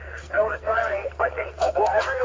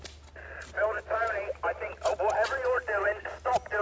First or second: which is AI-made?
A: first